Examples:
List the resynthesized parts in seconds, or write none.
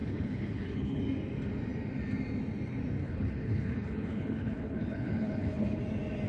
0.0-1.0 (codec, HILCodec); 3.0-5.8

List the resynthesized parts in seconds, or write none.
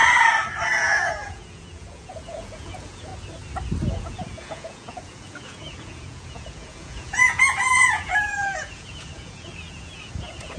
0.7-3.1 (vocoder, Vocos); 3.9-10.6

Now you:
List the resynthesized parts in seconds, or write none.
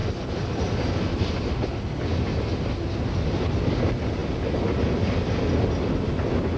none